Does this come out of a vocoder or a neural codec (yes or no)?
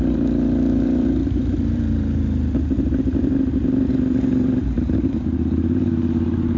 yes